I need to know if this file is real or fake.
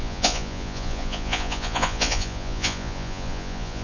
fake